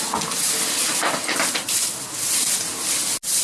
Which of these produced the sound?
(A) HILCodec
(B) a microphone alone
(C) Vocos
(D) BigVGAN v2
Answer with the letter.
B